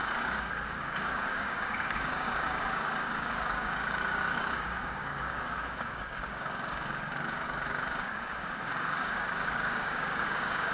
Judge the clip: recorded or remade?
remade